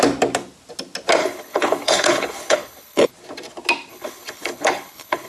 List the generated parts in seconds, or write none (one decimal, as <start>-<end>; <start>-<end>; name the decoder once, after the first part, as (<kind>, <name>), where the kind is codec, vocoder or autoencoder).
1.2-3.1 (codec, HILCodec); 3.9-5.3